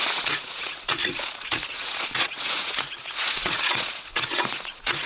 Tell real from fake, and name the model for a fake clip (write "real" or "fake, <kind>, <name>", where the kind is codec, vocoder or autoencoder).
fake, vocoder, Vocos